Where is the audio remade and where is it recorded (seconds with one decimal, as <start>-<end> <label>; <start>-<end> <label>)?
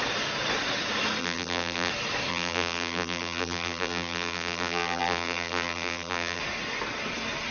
0.0-1.2 recorded; 1.2-1.9 remade; 1.9-2.3 recorded; 2.3-6.4 remade; 6.4-7.5 recorded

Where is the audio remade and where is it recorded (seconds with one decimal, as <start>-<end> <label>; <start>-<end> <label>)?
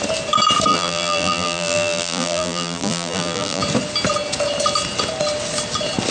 0.0-0.7 recorded; 0.7-3.6 remade; 3.6-6.1 recorded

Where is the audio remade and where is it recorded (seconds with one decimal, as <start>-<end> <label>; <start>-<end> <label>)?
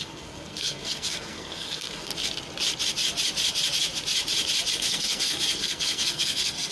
0.0-2.1 remade; 2.1-4.7 recorded; 4.7-6.7 remade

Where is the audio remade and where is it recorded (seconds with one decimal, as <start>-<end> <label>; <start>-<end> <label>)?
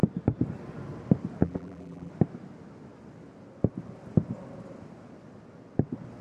0.0-1.4 recorded; 1.4-2.1 remade; 2.1-6.2 recorded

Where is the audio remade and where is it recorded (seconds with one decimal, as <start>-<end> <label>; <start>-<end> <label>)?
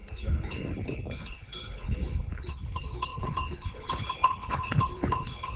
0.0-5.6 remade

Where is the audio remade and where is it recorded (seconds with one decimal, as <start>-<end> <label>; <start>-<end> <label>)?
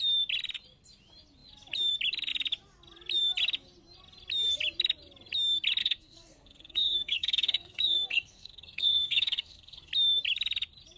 0.0-5.8 recorded; 5.8-9.9 remade; 9.9-11.0 recorded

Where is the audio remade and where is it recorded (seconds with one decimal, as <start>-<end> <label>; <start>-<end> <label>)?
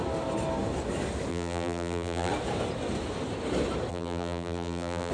0.0-1.3 recorded; 1.3-2.3 remade; 2.3-3.9 recorded; 3.9-5.1 remade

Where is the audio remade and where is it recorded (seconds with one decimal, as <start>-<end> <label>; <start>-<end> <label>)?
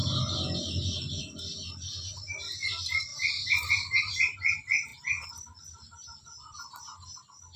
0.0-3.1 recorded; 3.1-3.7 remade; 3.7-7.6 recorded